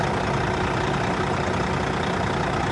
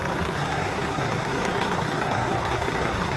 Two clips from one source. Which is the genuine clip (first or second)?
first